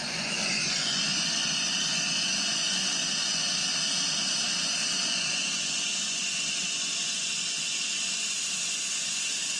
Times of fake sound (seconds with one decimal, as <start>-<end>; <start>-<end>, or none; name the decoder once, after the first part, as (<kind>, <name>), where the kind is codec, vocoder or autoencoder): 0.0-3.6 (vocoder, Vocos); 4.6-9.6